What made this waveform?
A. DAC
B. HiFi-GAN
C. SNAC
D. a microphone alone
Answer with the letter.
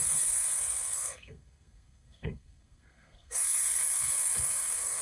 C